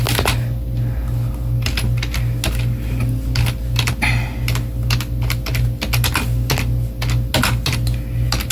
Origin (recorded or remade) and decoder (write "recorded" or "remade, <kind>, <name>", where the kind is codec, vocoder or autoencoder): recorded